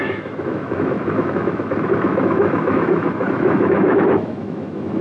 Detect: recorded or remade remade